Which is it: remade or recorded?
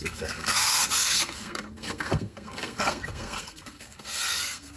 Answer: remade